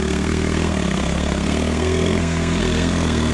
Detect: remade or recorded remade